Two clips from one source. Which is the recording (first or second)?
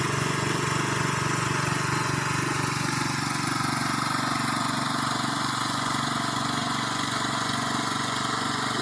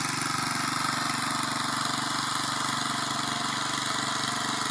second